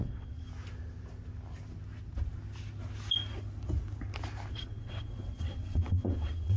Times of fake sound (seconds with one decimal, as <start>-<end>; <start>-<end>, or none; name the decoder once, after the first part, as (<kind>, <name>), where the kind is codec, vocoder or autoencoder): 0.0-0.5 (vocoder, WaveNeXt); 4.5-6.6